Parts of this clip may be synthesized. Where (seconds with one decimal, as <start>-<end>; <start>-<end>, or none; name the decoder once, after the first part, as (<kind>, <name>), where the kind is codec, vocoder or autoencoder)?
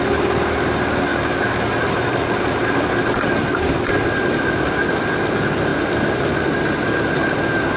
1.1-5.2 (vocoder, BigVGAN v2); 5.7-6.5